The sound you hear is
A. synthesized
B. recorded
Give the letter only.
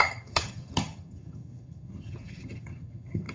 A